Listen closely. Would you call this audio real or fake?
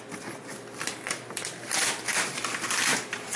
real